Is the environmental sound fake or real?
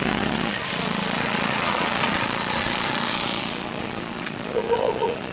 fake